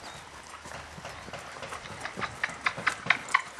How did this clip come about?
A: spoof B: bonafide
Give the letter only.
B